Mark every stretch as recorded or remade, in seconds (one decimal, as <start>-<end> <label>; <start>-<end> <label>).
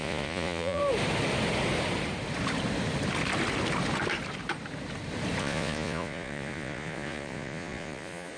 0.0-0.8 remade; 0.8-5.4 recorded; 5.4-8.4 remade